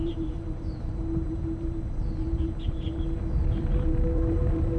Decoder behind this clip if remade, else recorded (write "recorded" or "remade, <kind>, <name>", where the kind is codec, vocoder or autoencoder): remade, vocoder, BigVGAN v2